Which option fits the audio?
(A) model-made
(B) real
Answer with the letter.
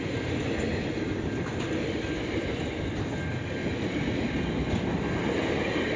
B